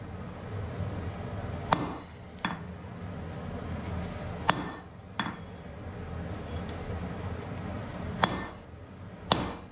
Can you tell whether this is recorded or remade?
recorded